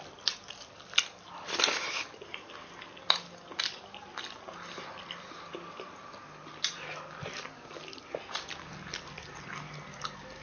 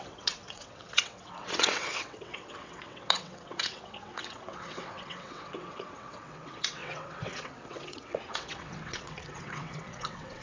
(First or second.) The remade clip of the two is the second